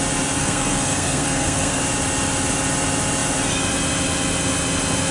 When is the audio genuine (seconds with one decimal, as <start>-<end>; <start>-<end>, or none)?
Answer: 0.0-0.4; 1.8-5.1